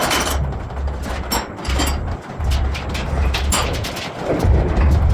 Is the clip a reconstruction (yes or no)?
no